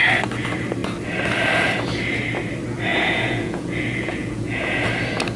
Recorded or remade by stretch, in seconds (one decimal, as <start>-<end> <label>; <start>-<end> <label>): 0.0-2.9 recorded; 2.9-4.8 remade; 4.8-5.4 recorded